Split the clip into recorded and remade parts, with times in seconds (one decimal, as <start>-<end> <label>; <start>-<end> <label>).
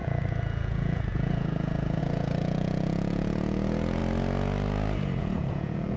0.0-4.0 remade; 4.0-5.2 recorded; 5.2-6.0 remade